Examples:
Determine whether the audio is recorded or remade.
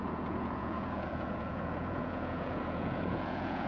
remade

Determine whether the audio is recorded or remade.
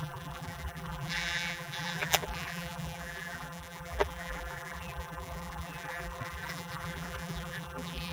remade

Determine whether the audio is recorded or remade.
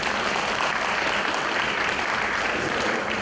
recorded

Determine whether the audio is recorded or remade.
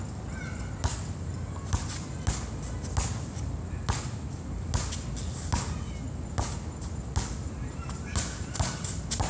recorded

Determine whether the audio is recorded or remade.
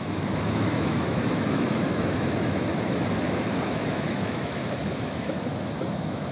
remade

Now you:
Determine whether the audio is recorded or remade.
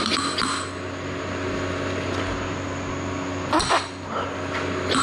recorded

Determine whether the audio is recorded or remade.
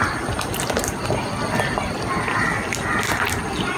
recorded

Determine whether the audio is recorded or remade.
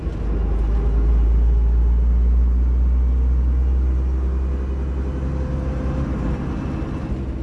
recorded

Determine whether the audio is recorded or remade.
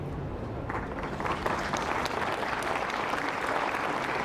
recorded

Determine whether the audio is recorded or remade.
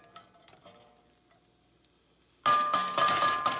recorded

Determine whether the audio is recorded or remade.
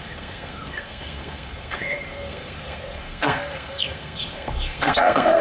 remade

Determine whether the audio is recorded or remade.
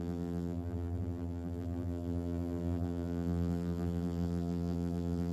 remade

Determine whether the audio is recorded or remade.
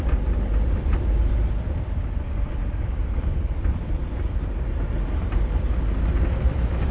remade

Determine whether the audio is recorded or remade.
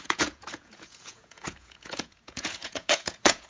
remade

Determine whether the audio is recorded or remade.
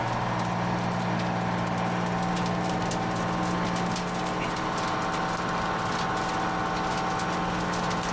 recorded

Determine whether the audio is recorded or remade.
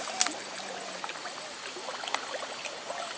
recorded